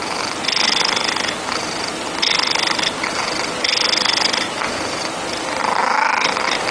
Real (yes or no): yes